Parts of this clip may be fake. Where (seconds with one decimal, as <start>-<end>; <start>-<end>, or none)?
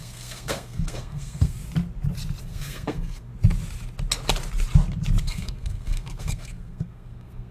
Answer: 0.0-1.6; 2.4-3.3; 5.2-7.5